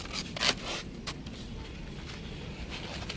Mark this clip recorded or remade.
recorded